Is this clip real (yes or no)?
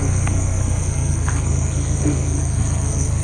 no